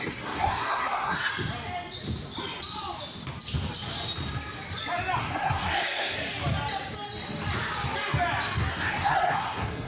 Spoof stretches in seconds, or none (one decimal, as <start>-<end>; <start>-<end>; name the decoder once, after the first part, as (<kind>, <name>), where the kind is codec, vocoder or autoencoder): 0.0-1.3 (codec, SNAC); 5.2-6.2; 8.7-9.9